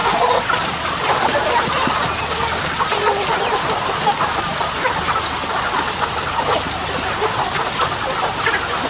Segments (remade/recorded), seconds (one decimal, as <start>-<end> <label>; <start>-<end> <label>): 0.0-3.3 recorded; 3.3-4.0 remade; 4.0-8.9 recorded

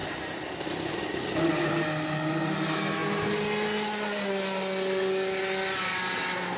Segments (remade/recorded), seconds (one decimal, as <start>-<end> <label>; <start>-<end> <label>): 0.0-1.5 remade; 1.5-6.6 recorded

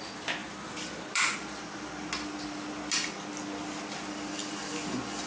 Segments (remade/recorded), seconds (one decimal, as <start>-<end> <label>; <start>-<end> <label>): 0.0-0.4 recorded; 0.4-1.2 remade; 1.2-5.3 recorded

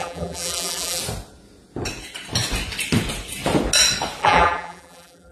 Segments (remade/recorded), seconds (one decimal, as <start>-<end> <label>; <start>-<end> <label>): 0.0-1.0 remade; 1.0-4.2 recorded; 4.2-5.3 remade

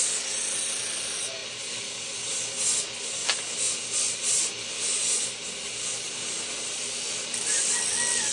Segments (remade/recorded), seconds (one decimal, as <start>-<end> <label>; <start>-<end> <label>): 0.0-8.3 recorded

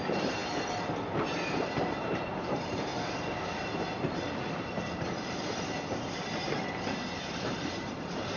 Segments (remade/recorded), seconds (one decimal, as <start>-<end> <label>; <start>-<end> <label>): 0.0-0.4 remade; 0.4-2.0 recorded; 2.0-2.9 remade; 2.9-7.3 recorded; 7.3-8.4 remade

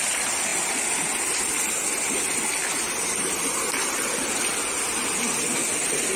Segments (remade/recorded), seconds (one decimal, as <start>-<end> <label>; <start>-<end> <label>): 0.0-6.2 recorded